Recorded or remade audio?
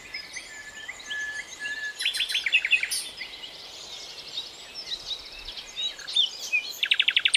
recorded